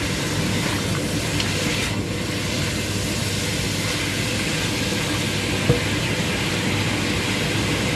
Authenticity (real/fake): real